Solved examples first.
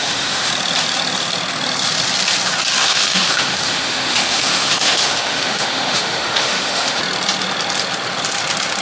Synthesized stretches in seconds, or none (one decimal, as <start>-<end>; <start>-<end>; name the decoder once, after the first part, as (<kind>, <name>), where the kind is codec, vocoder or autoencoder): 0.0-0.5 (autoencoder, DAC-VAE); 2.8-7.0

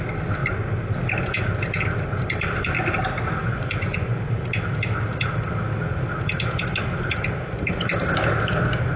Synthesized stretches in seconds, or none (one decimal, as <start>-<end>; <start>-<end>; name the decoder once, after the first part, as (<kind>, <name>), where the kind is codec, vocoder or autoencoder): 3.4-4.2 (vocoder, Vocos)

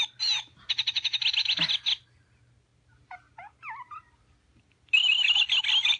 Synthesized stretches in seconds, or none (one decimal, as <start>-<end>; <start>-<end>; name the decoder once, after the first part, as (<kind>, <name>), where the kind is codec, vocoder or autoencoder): none

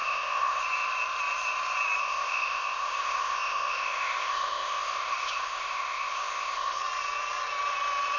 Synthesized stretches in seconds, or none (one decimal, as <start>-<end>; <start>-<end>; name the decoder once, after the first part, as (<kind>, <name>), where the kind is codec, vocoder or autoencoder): 0.0-0.6 (codec, ZipCodec); 2.0-6.8

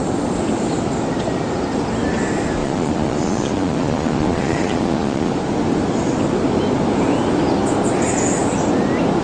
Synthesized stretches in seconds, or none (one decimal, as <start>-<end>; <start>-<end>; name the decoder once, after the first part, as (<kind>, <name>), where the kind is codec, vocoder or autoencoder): 2.6-5.3 (vocoder, Vocos)

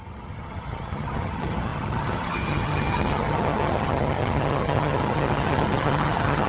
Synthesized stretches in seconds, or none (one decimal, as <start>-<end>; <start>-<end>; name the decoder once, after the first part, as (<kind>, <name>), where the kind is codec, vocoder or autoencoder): 0.0-6.5 (vocoder, HiFi-GAN)